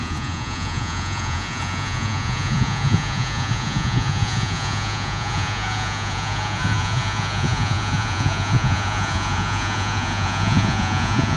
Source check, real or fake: fake